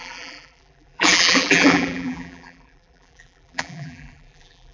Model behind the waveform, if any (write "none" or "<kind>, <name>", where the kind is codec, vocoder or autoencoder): vocoder, BigVGAN v2